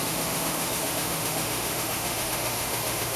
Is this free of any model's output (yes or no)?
no